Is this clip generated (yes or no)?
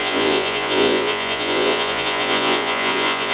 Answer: yes